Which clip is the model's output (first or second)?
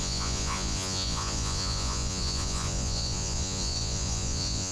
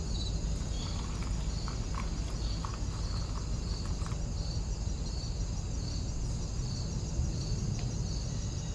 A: first